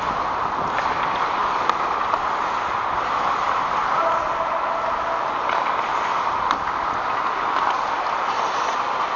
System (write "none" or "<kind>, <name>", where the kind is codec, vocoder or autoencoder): none